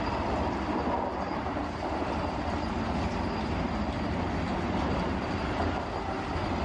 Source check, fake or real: real